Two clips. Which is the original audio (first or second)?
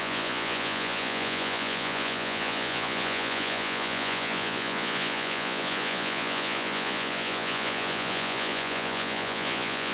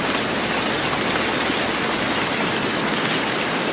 second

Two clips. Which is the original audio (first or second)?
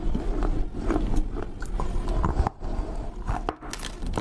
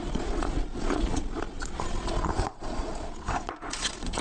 first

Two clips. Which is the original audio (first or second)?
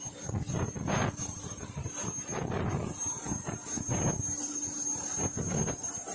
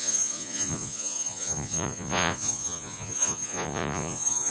first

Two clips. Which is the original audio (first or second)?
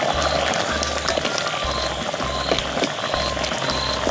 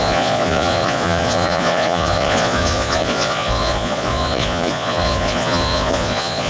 first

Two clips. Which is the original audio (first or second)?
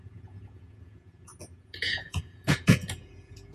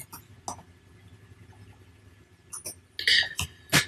second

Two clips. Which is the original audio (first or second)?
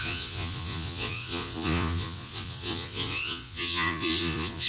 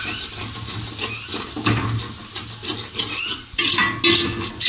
second